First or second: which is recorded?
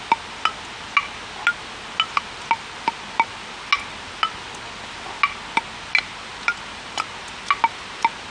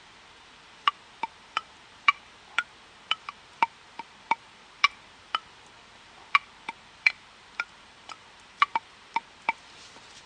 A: first